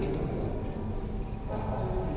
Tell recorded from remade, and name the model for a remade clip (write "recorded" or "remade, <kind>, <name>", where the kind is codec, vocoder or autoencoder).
recorded